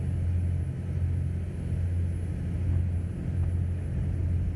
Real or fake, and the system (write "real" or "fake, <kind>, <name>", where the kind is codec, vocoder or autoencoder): real